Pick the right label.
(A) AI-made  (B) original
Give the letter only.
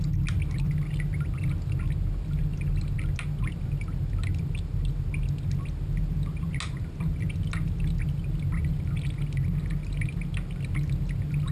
B